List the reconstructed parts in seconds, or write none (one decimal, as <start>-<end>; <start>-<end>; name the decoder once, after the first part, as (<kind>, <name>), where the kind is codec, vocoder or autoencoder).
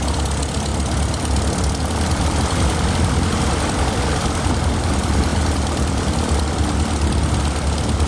0.7-2.9 (vocoder, BigVGAN v2)